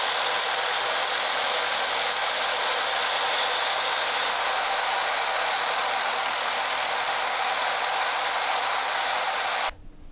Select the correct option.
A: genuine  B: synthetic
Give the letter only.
A